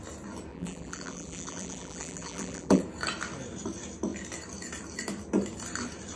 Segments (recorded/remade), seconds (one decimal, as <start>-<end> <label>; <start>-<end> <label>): 0.0-0.5 recorded; 0.5-2.8 remade; 2.8-6.2 recorded